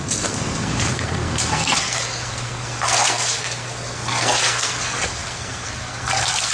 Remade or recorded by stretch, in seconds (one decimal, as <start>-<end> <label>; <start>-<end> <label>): 0.0-6.5 remade